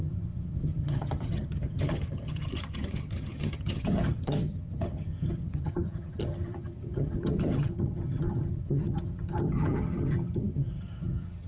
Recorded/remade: remade